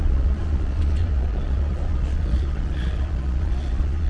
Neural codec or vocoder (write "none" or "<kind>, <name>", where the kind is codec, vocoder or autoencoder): vocoder, Vocos